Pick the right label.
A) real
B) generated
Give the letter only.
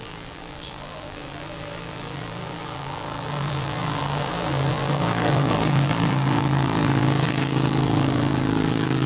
B